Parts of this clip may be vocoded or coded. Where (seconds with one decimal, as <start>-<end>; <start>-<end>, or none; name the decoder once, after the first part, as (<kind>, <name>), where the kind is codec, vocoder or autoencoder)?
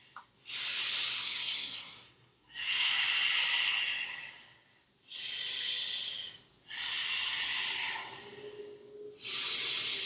1.2-2.9 (codec, SNAC)